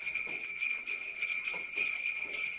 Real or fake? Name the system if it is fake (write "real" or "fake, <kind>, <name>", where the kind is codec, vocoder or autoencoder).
fake, vocoder, WaveNeXt